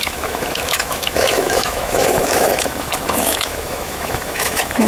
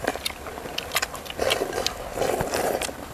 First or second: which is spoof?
first